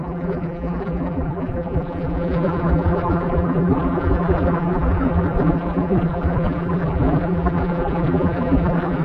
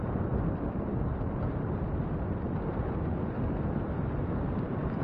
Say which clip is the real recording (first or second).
second